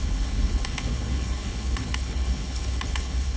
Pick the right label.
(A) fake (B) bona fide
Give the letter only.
A